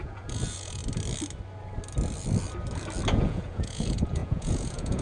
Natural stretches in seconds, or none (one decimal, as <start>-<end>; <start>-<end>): 0.8-3.1